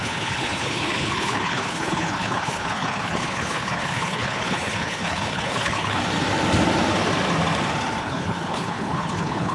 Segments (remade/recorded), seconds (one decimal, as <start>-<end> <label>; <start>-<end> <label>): 0.0-6.0 remade; 6.0-8.0 recorded; 8.0-9.5 remade